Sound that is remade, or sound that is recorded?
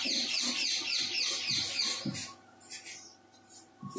recorded